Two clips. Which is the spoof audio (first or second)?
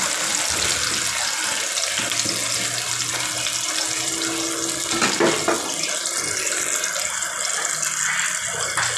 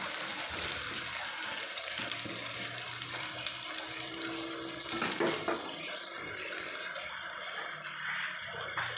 second